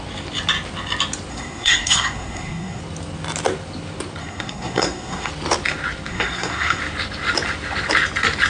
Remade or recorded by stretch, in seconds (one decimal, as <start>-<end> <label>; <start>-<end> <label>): 0.0-1.3 recorded; 1.3-2.8 remade; 2.8-4.2 recorded; 4.2-5.3 remade; 5.3-6.1 recorded; 6.1-6.8 remade; 6.8-8.5 recorded